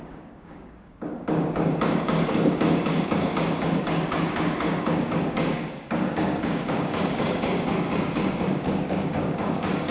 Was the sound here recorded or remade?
remade